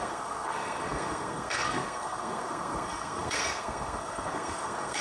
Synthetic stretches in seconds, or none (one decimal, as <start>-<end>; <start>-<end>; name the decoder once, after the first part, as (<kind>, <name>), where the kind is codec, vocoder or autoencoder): 0.0-5.0 (codec, SNAC)